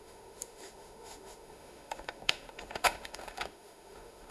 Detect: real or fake fake